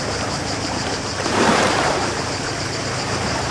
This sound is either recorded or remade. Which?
remade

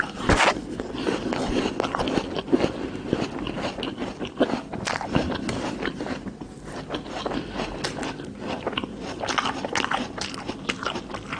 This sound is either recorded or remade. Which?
recorded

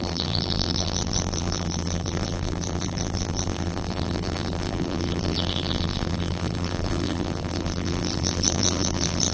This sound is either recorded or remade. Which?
remade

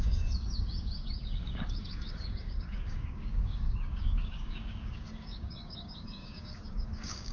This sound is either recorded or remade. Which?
remade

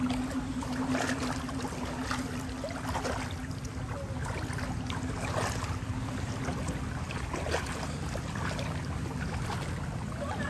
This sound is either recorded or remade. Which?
recorded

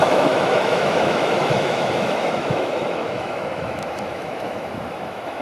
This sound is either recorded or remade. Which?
remade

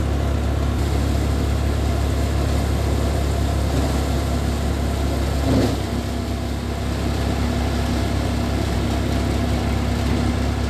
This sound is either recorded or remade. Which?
recorded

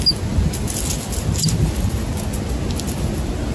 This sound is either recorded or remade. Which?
recorded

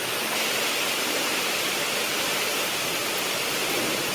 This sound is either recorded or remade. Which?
remade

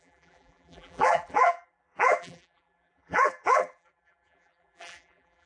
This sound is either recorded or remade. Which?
remade